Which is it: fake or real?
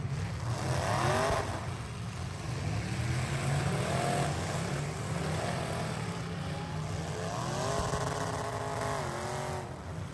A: real